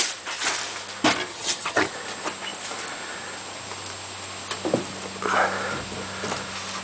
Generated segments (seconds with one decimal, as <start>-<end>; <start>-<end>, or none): 1.3-1.9